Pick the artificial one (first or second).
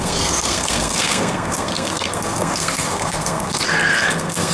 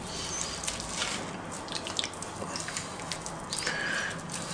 first